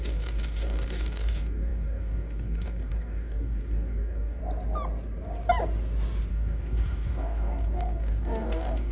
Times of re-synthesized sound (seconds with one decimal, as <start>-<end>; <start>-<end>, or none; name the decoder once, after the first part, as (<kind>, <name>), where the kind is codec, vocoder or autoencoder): 0.0-4.4 (codec, DAC); 6.3-8.9